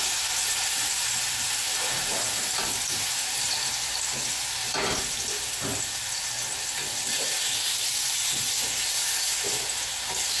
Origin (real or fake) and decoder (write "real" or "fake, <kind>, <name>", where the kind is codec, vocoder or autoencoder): real